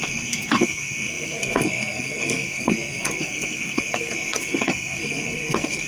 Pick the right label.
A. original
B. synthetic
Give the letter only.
B